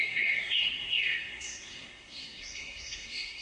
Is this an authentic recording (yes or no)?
no